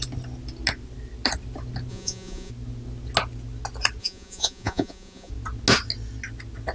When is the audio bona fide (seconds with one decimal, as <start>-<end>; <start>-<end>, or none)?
0.0-1.9; 2.5-4.0; 5.3-6.7